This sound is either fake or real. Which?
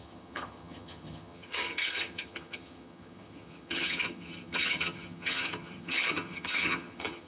fake